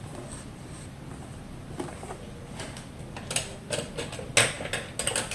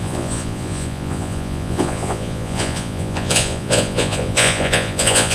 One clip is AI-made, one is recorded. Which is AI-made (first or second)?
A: second